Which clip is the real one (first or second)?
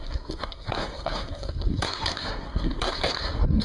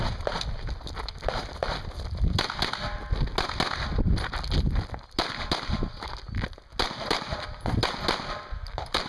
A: second